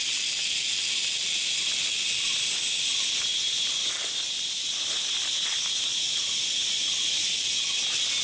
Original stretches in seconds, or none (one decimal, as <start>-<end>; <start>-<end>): 0.0-8.2